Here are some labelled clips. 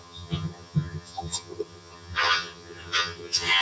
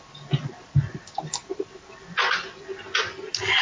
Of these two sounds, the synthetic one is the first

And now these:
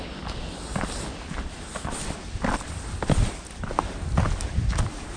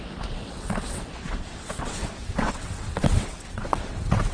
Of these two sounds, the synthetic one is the second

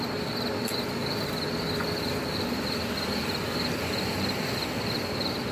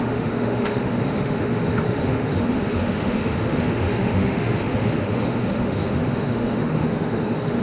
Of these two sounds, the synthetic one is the second